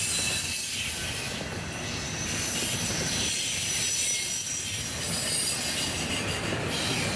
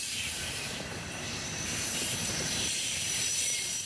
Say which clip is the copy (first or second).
second